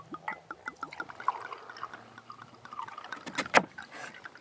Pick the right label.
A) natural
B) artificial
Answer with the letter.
A